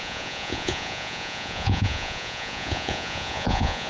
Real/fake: fake